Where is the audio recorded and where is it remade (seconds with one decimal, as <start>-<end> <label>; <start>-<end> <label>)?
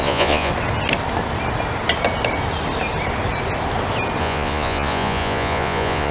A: 0.0-0.5 remade; 0.5-4.2 recorded; 4.2-6.1 remade